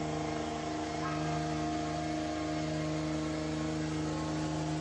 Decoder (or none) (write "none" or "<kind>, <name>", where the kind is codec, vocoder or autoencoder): none